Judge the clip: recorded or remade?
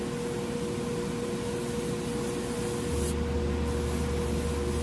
recorded